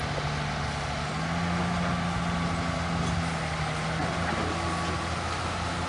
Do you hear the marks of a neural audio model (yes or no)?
no